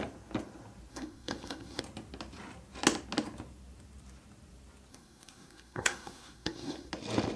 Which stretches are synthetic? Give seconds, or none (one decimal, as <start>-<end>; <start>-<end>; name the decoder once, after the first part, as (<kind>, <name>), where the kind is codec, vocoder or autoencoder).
0.9-1.8 (codec, SNAC); 4.9-6.9